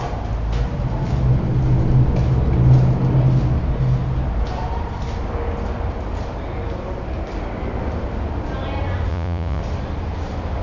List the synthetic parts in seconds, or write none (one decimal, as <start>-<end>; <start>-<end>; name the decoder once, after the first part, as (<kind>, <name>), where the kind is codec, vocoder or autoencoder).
9.1-9.6 (vocoder, Vocos)